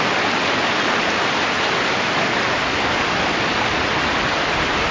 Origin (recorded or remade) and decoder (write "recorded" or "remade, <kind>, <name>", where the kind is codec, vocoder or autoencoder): recorded